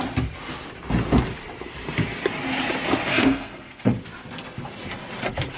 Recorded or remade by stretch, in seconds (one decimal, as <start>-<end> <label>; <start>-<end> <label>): 0.0-3.1 recorded; 3.1-3.9 remade; 3.9-5.6 recorded